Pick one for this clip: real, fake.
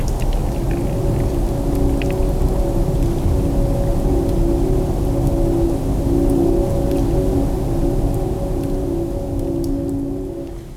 real